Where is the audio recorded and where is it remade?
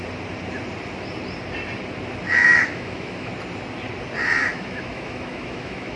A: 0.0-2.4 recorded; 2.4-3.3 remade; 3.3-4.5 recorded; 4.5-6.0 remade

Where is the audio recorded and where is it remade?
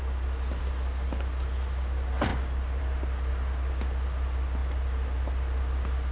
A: 0.0-6.1 recorded